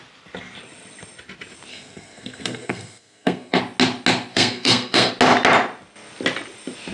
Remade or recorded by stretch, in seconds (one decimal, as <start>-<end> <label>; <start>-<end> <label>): 0.0-1.7 recorded; 1.7-3.6 remade; 3.6-4.3 recorded; 4.3-5.1 remade; 5.1-6.9 recorded